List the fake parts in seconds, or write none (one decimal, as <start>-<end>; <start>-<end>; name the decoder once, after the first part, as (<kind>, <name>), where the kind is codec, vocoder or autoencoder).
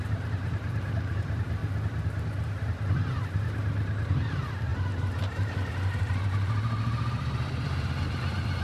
0.0-1.6 (vocoder, BigVGAN v2); 3.1-8.6